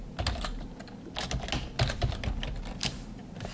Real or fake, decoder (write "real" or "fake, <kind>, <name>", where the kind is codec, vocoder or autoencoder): real